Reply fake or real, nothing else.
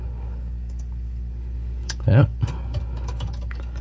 fake